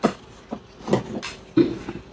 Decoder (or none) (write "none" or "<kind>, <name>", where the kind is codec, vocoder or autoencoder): none